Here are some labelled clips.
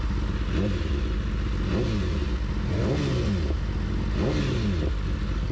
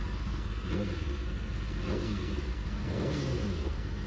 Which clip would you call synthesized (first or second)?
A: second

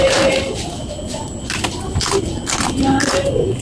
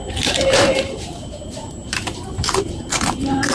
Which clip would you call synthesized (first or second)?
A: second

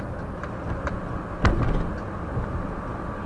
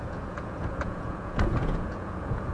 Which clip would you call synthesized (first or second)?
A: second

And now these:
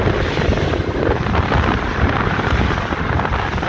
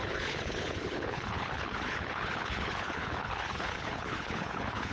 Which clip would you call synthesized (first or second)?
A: second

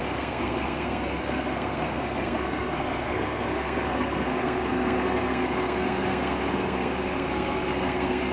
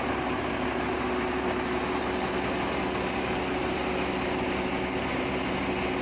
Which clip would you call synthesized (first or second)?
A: first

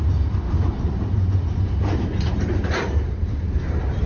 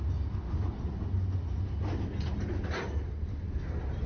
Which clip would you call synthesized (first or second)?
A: first